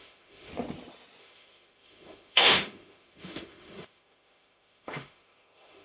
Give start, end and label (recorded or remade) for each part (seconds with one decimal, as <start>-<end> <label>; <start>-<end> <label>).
0.0-0.5 remade; 0.5-1.2 recorded; 1.2-5.8 remade